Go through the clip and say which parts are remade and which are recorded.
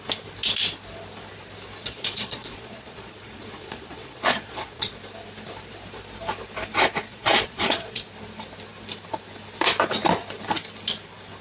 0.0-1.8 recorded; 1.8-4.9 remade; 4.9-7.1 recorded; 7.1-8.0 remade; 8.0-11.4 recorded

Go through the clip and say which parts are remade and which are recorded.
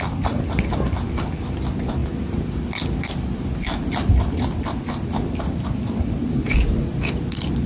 0.0-7.7 recorded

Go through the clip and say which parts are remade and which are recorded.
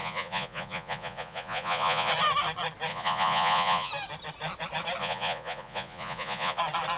0.0-2.1 remade; 2.1-2.9 recorded; 2.9-3.9 remade; 3.9-5.0 recorded; 5.0-6.6 remade; 6.6-7.0 recorded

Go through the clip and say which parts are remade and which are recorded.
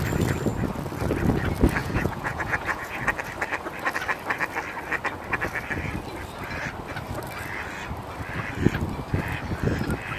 0.0-1.8 recorded; 1.8-3.0 remade; 3.0-10.2 recorded